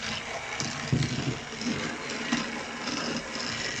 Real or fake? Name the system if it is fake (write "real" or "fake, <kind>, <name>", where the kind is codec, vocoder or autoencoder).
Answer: real